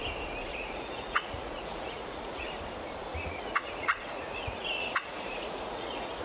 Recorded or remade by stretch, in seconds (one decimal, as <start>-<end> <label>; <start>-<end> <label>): 0.0-0.5 recorded; 0.5-2.5 remade; 2.5-3.1 recorded; 3.1-6.2 remade